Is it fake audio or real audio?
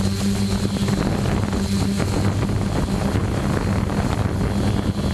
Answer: real